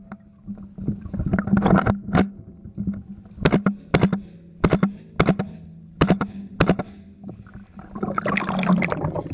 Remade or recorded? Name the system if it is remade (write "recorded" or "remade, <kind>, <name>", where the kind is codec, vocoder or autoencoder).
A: recorded